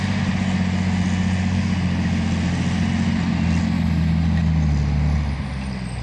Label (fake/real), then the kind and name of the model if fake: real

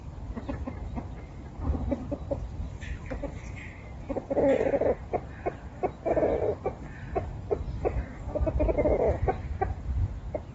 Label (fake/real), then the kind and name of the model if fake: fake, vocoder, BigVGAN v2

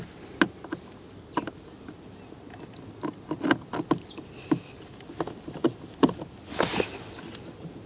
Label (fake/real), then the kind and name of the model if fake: real